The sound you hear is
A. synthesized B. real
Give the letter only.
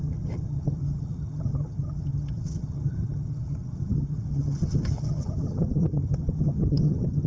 A